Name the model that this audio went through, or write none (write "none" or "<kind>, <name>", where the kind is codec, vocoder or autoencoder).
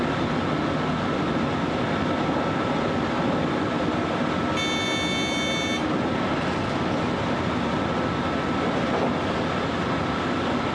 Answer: none